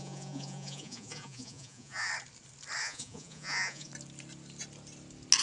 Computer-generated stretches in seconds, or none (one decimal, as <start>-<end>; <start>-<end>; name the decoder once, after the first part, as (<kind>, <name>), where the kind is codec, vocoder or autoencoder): 0.0-2.1 (vocoder, Vocos); 2.8-3.9